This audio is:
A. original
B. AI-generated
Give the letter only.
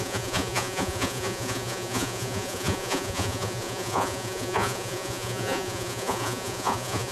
B